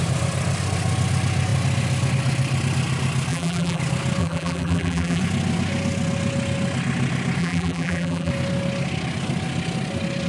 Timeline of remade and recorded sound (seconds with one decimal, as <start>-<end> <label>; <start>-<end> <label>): 0.0-3.3 recorded; 3.3-3.8 remade; 3.8-4.2 recorded; 4.2-5.2 remade; 5.2-7.4 recorded; 7.4-8.3 remade; 8.3-10.3 recorded